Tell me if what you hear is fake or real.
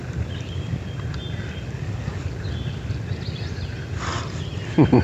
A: real